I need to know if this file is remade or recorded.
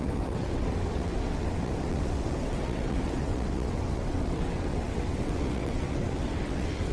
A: remade